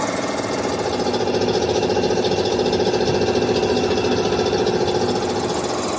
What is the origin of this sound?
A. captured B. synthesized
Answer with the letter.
A